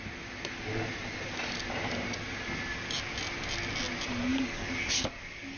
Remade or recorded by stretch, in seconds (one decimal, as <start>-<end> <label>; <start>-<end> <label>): 0.0-4.3 recorded; 4.3-5.6 remade